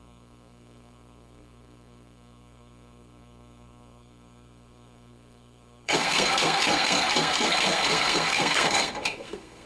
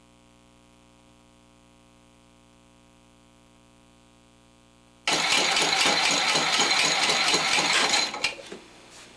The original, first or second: second